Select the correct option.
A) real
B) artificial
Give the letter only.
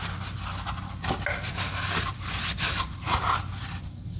A